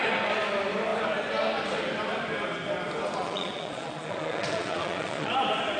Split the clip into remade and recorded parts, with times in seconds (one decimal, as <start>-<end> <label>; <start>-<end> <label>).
0.0-3.2 recorded; 3.2-5.3 remade; 5.3-5.8 recorded